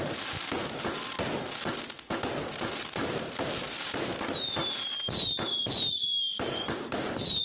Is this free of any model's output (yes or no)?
yes